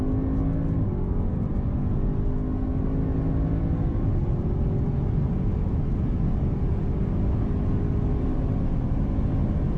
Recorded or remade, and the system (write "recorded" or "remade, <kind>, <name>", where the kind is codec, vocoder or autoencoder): recorded